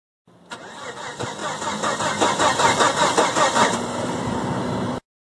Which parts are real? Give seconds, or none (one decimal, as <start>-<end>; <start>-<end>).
0.0-0.9